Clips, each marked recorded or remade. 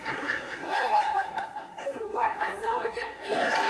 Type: remade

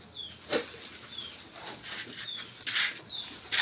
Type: recorded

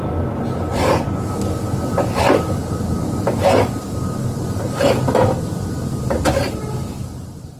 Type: recorded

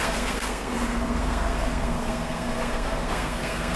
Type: remade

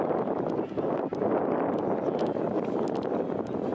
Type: recorded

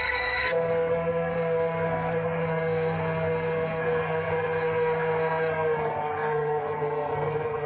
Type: remade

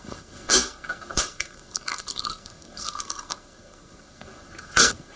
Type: remade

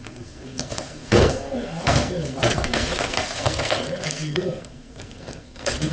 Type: remade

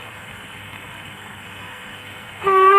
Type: remade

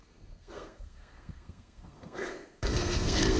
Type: remade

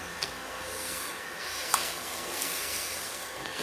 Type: remade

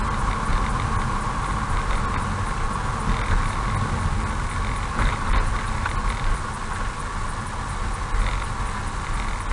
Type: recorded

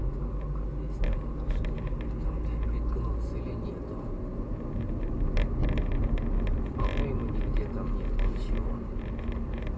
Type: recorded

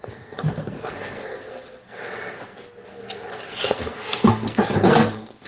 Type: remade